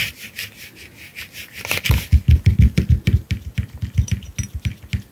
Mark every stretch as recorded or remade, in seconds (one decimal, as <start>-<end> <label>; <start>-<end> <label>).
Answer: 0.0-5.1 recorded